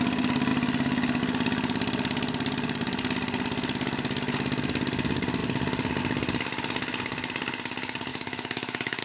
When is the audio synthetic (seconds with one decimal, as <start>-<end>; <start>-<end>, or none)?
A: 8.1-9.0